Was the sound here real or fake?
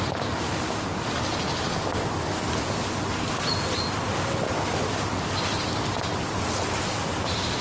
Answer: real